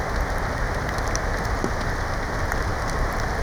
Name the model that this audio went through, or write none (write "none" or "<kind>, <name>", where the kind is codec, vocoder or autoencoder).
none